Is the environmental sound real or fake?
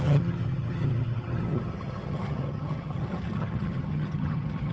fake